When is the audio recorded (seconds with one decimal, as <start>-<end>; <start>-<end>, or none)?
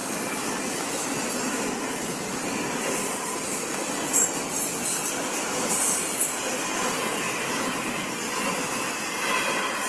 0.0-9.9